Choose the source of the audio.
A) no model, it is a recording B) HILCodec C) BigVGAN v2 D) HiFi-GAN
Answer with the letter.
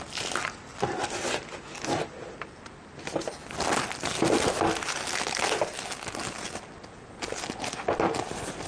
A